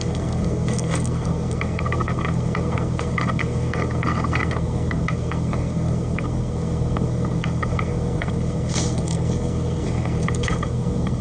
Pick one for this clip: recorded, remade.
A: remade